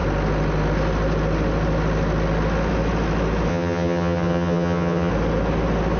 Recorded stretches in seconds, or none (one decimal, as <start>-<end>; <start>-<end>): 0.0-3.5; 5.1-6.0